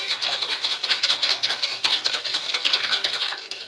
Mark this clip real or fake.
fake